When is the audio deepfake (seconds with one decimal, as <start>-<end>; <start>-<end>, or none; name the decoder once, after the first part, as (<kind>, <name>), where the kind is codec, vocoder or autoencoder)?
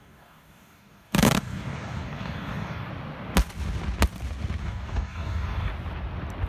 0.0-2.9 (codec, DAC); 4.6-5.7